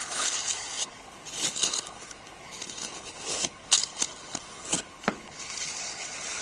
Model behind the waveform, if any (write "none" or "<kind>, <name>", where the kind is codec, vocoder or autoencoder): codec, HILCodec